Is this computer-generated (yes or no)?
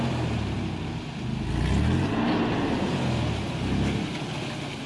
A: no